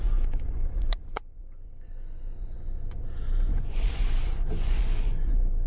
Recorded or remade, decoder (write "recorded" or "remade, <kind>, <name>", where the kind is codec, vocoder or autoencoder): remade, vocoder, Vocos